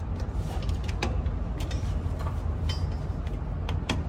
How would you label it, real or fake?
real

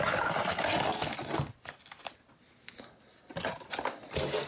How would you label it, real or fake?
real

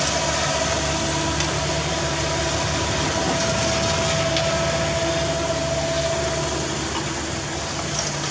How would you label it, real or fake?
real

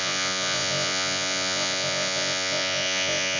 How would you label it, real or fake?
fake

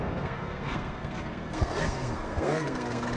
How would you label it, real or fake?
fake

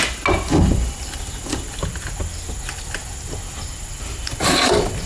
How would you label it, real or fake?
real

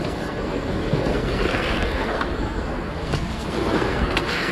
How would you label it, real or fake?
fake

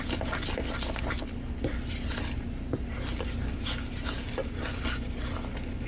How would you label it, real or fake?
real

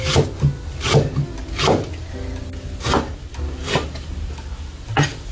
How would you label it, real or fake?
real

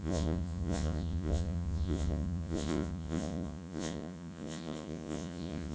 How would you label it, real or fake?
fake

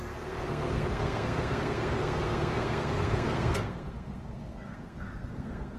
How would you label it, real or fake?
fake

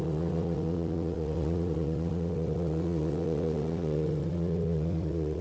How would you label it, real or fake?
fake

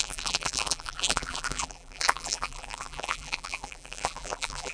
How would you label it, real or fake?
fake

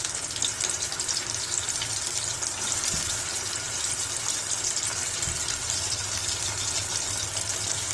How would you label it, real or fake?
real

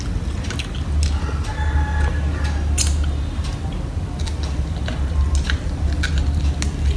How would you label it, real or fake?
real